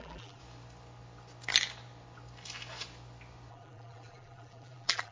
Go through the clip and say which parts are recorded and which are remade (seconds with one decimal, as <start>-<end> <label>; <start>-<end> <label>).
0.0-0.4 remade; 0.4-3.5 recorded; 3.5-5.1 remade